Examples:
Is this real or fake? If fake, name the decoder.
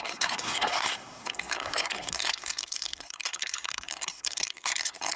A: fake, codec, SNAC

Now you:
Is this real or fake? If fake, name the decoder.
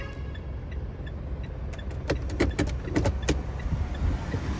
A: real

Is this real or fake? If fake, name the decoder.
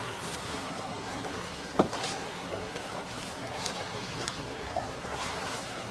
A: fake, codec, SNAC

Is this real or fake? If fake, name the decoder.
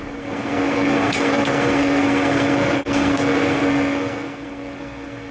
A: fake, codec, SNAC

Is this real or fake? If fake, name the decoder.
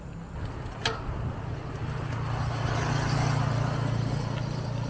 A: real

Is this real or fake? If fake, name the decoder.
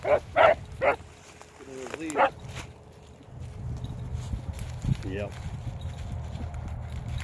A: real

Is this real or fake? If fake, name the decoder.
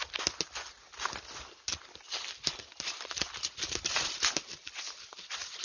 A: real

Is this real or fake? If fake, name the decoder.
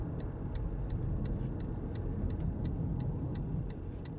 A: real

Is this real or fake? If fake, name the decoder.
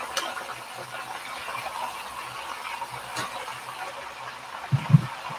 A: real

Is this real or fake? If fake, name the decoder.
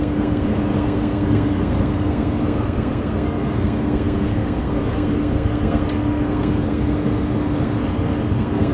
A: fake, codec, SNAC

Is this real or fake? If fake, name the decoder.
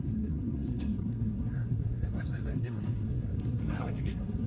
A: fake, codec, SNAC